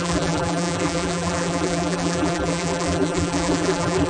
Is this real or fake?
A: fake